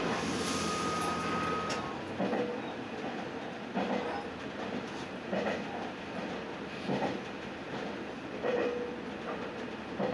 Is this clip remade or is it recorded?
recorded